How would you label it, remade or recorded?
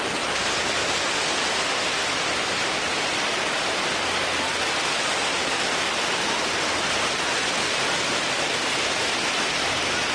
recorded